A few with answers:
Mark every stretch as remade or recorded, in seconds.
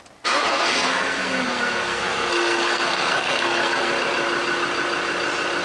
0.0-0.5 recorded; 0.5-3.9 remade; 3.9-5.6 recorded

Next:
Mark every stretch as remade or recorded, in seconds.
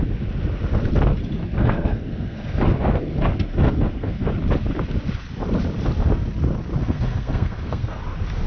0.0-1.4 recorded; 1.4-4.3 remade; 4.3-6.8 recorded; 6.8-8.0 remade; 8.0-8.5 recorded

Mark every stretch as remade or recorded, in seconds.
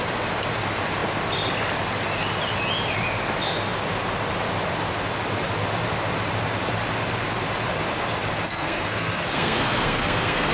0.0-8.5 recorded; 8.5-10.5 remade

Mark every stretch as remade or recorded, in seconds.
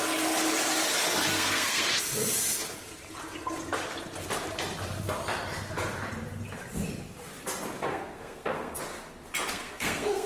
0.0-1.3 recorded; 1.3-1.9 remade; 1.9-7.9 recorded; 7.9-8.8 remade; 8.8-9.5 recorded; 9.5-10.3 remade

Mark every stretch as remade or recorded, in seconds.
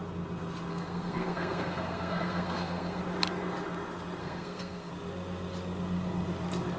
0.0-0.7 recorded; 0.7-3.0 remade; 3.0-4.2 recorded; 4.2-4.9 remade; 4.9-6.8 recorded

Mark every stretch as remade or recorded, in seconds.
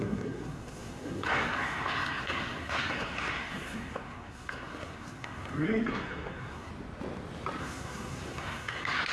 0.0-6.7 remade; 6.7-7.6 recorded; 7.6-9.1 remade